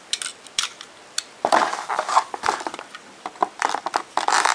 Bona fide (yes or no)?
yes